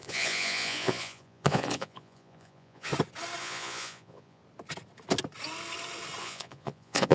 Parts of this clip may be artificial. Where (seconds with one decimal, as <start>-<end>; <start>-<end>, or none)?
0.0-2.9; 3.4-4.4; 6.2-7.1